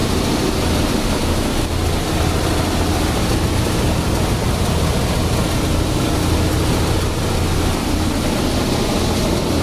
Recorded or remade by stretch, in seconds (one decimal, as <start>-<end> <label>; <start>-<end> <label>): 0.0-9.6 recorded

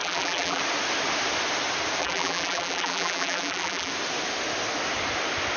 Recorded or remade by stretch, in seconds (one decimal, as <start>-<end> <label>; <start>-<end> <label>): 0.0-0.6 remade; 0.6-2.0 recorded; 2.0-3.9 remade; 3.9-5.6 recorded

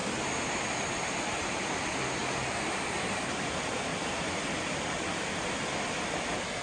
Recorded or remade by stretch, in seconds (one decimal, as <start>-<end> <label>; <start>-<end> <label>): 0.0-2.2 recorded; 2.2-3.4 remade; 3.4-3.9 recorded; 3.9-5.4 remade; 5.4-6.6 recorded